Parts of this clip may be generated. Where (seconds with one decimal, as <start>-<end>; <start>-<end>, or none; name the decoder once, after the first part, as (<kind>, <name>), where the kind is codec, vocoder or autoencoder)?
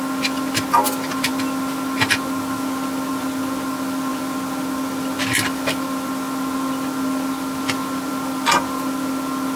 none